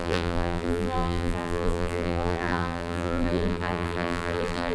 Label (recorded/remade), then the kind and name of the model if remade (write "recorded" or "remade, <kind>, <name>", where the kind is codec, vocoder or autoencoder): remade, vocoder, BigVGAN v2